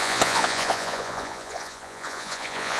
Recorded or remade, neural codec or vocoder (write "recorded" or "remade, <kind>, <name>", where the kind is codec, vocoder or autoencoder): remade, vocoder, Vocos